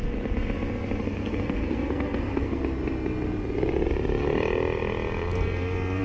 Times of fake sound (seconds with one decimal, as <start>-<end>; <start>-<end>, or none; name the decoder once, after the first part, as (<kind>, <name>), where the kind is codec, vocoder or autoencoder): 1.0-2.6 (codec, SNAC)